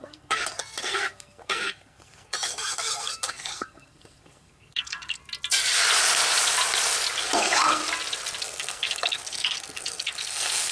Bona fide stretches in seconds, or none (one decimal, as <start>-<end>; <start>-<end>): 5.2-7.2; 7.8-8.4